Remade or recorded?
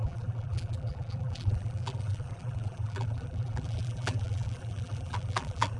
remade